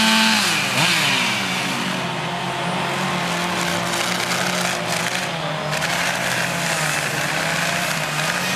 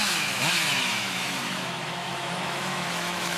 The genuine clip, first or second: first